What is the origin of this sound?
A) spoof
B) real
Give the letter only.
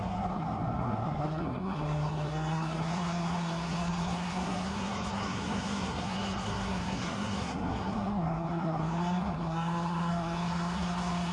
A